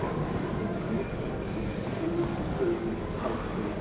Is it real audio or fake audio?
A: fake